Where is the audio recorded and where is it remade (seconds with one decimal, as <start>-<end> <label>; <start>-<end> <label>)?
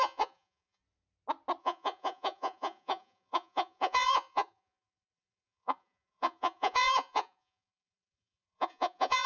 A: 0.0-0.8 remade; 0.8-1.6 recorded; 1.6-9.3 remade